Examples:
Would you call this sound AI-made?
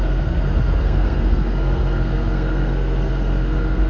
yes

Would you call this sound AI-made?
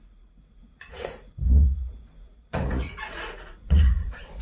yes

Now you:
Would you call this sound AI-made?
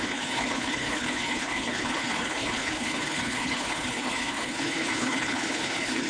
yes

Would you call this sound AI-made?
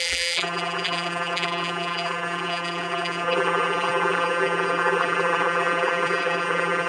yes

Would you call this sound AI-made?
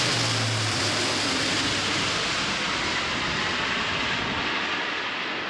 yes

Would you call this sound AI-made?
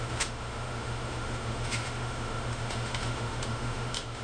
yes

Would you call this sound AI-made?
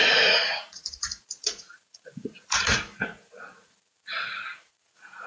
yes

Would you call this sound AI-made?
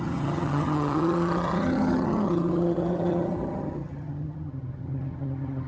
yes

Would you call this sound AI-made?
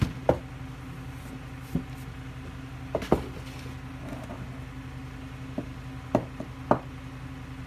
no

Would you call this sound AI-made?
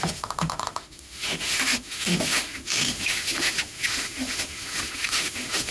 yes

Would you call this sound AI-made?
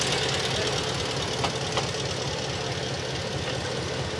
no